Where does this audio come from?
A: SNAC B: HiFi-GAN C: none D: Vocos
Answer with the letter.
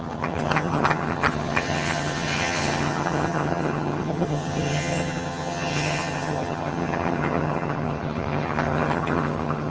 B